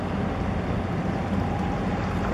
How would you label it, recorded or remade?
recorded